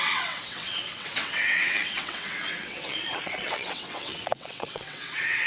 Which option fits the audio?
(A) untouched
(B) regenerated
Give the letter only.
B